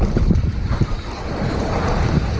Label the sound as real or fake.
fake